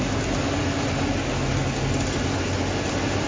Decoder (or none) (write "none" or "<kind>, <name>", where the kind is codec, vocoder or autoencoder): none